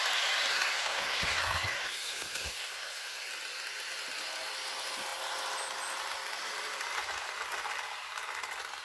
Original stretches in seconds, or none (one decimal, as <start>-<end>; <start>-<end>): 0.0-0.5; 3.3-8.8